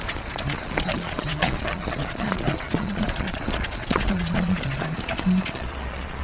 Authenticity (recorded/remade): remade